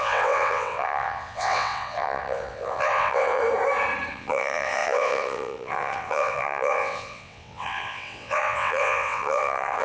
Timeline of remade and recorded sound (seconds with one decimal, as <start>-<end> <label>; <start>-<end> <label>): 0.0-3.4 remade; 3.4-4.1 recorded; 4.1-9.8 remade